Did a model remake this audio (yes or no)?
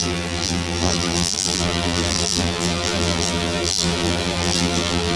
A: yes